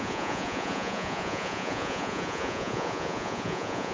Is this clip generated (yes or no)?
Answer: yes